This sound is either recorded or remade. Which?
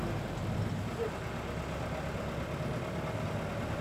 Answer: recorded